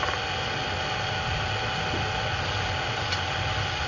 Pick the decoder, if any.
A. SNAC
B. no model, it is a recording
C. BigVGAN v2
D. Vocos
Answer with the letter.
B